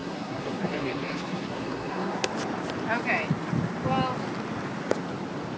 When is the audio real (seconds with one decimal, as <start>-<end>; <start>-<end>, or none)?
2.3-5.6